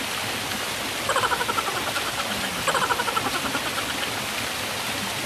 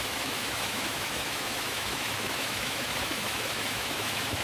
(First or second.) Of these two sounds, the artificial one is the second